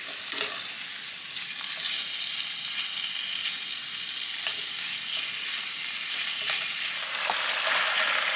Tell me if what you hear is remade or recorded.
recorded